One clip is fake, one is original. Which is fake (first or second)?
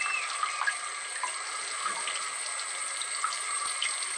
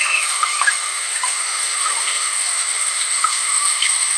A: second